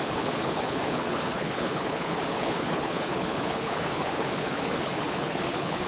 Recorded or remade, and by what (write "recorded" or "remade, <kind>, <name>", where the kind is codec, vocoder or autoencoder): remade, codec, HILCodec